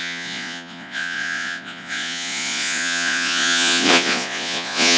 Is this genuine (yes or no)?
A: no